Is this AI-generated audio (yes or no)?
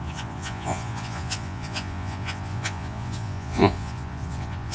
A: yes